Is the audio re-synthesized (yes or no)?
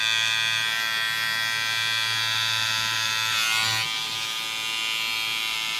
no